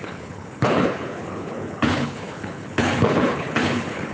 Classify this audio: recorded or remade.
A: remade